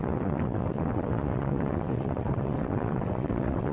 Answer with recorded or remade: remade